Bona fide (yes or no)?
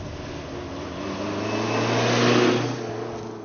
yes